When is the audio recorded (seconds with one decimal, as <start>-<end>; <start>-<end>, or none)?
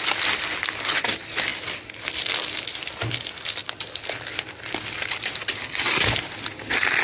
0.0-7.0